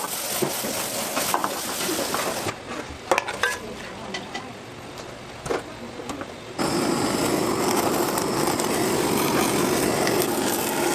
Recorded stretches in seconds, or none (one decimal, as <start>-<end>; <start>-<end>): 0.0-1.4; 2.5-10.9

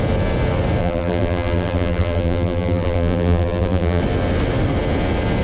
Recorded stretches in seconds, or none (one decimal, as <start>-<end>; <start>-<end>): 0.0-0.8; 4.0-5.4

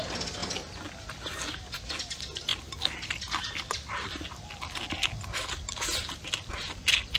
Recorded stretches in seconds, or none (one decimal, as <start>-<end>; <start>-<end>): 0.0-7.2

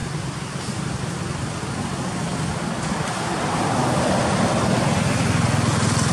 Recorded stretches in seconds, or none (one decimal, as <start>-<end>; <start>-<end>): 1.6-2.3; 4.1-6.1

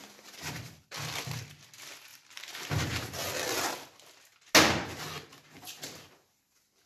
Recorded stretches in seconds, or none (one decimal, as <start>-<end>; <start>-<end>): 1.7-2.1; 2.7-6.9

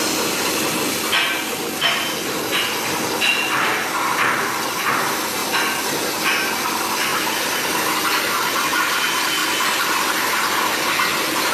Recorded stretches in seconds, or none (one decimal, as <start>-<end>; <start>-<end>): 0.0-7.1; 8.1-11.5

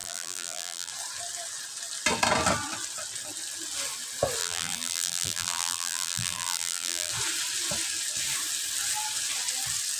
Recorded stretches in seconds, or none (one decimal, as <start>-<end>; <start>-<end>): 0.9-4.4; 7.1-10.0

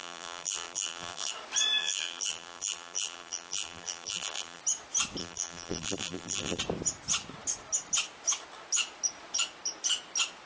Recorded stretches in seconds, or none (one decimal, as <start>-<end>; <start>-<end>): 1.3-1.8; 4.6-5.2; 6.6-10.5